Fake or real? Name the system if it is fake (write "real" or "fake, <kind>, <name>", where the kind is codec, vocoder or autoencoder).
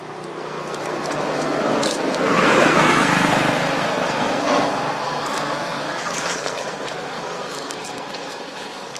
fake, codec, SNAC